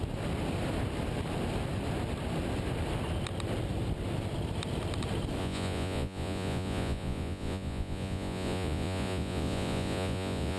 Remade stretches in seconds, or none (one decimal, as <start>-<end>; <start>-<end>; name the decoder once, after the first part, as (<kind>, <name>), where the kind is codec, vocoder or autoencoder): 5.4-10.6 (vocoder, Vocos)